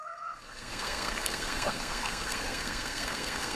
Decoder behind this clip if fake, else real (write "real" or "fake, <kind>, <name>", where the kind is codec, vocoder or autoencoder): fake, codec, SNAC